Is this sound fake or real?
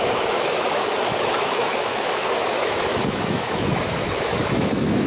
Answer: fake